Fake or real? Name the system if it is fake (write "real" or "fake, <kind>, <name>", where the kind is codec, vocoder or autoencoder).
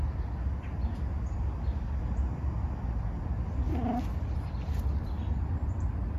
real